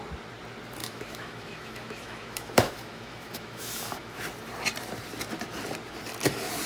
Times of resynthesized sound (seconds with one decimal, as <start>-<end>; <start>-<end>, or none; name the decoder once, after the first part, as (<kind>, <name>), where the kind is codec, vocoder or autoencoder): 0.8-4.2 (autoencoder, DAC-VAE)